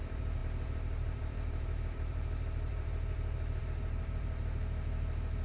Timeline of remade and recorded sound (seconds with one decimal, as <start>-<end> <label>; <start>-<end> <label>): 0.0-5.4 remade